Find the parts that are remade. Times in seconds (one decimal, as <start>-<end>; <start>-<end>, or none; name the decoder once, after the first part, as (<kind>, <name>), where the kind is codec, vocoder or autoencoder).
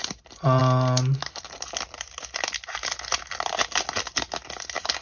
none